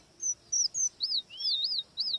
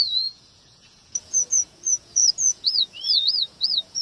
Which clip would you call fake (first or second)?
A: second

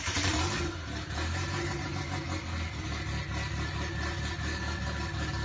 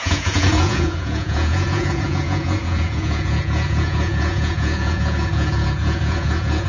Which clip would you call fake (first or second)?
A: second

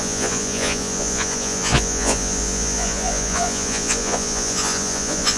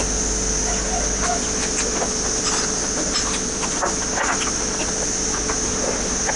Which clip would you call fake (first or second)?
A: first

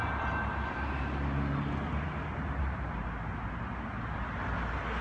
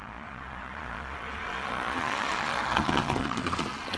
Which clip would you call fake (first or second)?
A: second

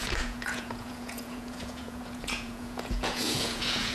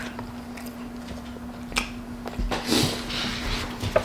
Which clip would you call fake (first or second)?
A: first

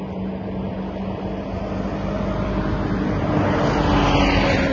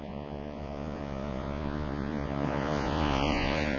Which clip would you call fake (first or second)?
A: second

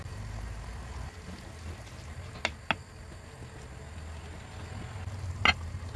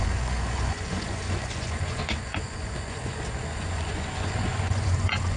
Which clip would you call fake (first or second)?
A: second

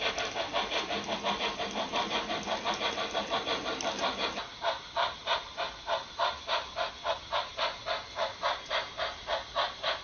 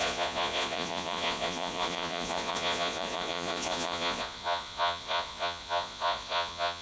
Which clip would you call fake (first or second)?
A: second